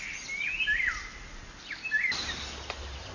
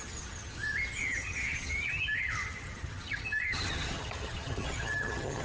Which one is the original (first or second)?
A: first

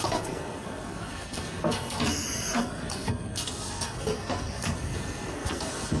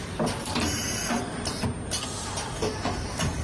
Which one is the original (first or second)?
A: second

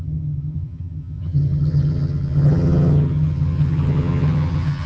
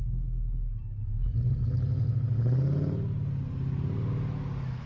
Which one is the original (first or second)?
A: second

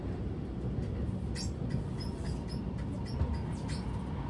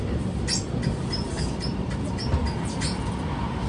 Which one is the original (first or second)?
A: first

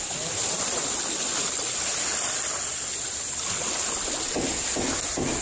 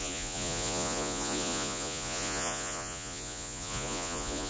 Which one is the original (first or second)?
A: first